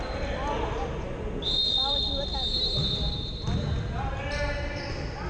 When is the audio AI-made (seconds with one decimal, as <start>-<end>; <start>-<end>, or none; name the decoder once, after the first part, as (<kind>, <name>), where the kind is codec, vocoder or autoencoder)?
none